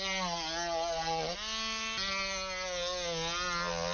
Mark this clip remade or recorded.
recorded